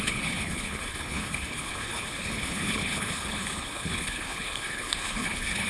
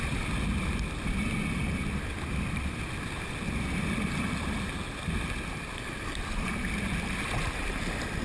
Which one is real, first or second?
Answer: second